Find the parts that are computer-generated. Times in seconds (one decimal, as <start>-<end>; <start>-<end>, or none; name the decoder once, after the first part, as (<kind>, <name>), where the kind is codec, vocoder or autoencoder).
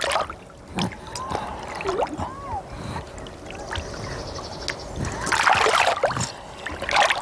none